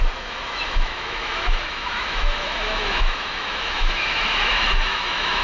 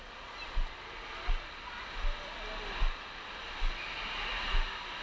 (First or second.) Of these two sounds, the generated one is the first